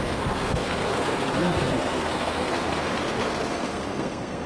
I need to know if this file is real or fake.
fake